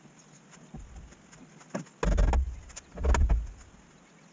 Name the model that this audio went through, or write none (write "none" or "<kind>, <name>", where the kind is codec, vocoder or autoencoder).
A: none